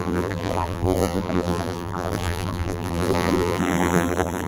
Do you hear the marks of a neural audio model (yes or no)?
yes